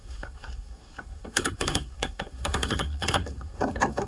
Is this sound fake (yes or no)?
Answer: yes